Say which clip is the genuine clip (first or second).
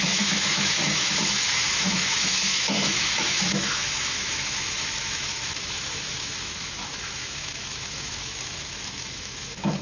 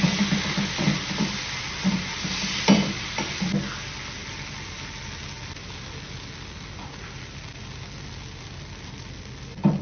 second